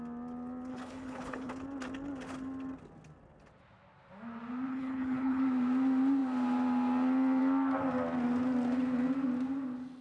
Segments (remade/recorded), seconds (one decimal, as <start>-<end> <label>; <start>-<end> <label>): 0.0-0.7 recorded; 0.7-1.5 remade; 1.5-4.7 recorded; 4.7-5.4 remade; 5.4-10.0 recorded